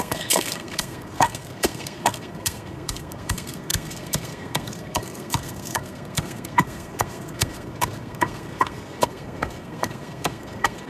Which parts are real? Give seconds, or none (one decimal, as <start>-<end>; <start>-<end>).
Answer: none